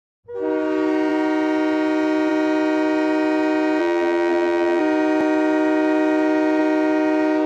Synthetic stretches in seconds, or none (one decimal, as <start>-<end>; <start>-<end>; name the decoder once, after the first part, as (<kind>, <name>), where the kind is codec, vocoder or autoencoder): 3.8-4.8 (vocoder, BigVGAN v2)